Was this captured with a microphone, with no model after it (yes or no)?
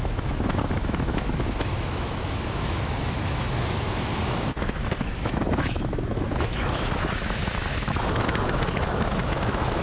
no